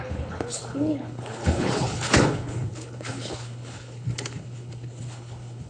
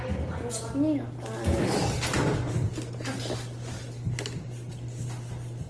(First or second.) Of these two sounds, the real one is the second